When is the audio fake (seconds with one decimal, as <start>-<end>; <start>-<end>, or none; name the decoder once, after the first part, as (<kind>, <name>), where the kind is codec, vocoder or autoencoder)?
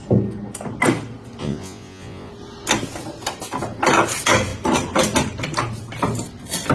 1.4-2.3 (vocoder, Vocos)